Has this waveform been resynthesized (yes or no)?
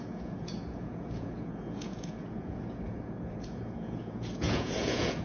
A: yes